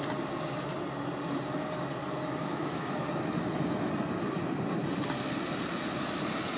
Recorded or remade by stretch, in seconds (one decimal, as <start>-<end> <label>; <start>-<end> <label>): 0.0-2.4 recorded; 2.4-3.0 remade; 3.0-6.6 recorded